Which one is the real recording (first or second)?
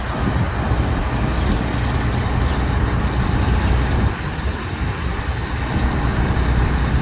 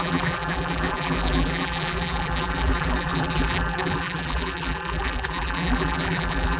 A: first